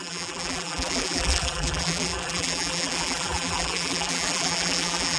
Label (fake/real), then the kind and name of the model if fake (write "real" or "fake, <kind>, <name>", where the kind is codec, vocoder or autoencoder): fake, vocoder, BigVGAN v2